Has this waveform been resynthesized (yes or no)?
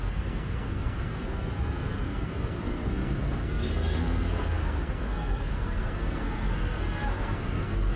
yes